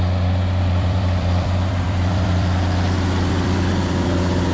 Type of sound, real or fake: fake